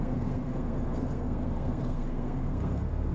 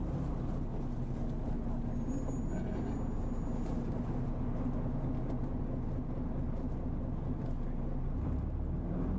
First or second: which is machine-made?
first